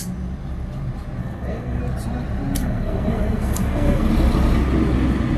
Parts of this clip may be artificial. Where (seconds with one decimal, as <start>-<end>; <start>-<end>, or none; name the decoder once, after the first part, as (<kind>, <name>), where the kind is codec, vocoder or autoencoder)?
1.2-1.8 (codec, SNAC); 2.6-4.1